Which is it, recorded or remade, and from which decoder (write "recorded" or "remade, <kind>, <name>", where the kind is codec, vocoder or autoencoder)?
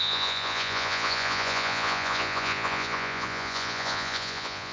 remade, vocoder, Vocos